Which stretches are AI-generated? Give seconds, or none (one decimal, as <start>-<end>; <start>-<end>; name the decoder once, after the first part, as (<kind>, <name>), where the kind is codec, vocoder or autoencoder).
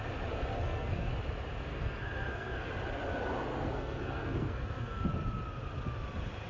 0.5-1.1 (codec, SNAC); 1.7-2.7; 3.5-5.1